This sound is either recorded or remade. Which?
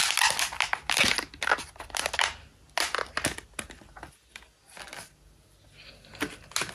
recorded